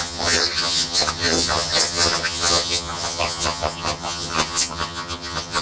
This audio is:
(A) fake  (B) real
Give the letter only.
A